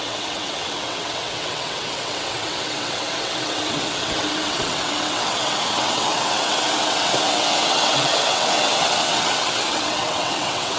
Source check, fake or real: fake